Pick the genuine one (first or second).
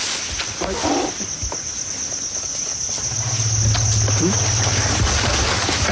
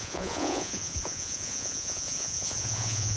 first